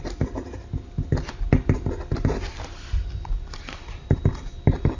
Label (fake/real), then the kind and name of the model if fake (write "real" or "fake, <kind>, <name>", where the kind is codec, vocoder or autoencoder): real